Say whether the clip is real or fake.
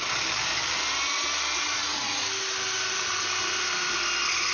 real